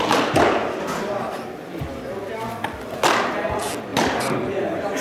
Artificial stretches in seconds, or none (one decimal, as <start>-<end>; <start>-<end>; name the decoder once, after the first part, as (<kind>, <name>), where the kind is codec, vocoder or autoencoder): 3.9-5.0 (vocoder, BigVGAN v2)